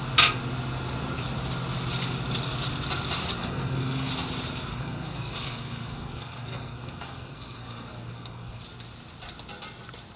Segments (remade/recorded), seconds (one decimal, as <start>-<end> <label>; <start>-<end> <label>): 0.0-3.4 recorded; 3.4-4.1 remade; 4.1-4.7 recorded; 4.7-8.6 remade; 8.6-10.2 recorded